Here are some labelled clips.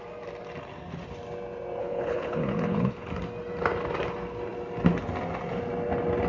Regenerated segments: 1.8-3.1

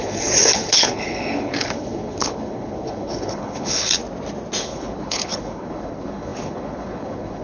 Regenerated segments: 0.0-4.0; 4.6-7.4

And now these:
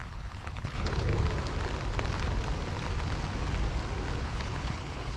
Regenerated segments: 0.0-1.1; 4.2-5.2

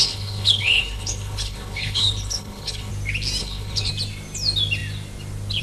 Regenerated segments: 0.0-2.9; 3.4-3.9